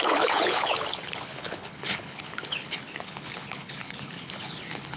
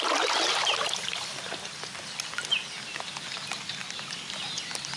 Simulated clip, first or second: first